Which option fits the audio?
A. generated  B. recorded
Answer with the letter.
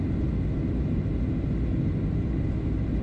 B